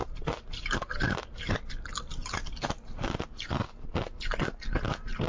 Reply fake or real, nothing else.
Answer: real